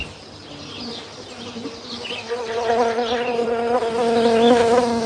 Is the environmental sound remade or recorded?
recorded